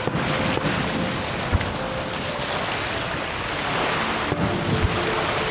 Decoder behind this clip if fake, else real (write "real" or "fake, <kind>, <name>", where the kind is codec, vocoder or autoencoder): real